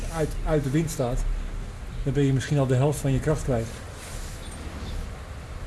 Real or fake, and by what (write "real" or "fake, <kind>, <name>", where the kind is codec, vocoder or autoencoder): real